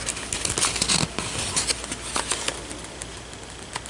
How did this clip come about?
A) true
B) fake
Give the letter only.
A